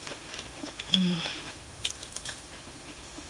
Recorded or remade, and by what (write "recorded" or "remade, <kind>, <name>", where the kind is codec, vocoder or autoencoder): remade, autoencoder, DAC-VAE